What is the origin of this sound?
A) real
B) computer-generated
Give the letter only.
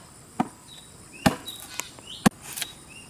A